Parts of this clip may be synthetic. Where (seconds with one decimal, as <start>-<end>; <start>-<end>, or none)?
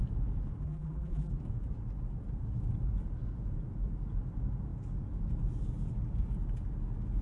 0.6-1.3